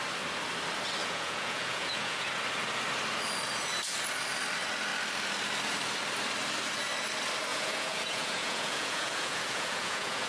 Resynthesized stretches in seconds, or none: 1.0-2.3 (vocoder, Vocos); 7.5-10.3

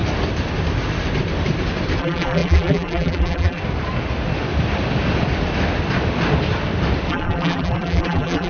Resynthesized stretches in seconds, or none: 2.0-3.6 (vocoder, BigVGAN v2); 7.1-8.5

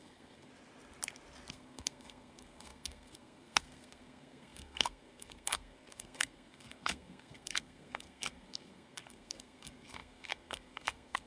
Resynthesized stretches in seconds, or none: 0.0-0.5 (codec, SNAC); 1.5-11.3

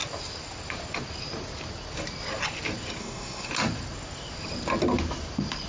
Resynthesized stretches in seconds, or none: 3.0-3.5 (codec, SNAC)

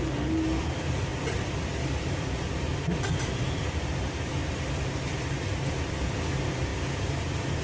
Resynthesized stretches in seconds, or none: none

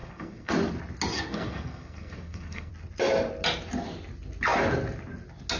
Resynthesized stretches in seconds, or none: 0.0-0.5 (codec, SNAC); 1.1-2.7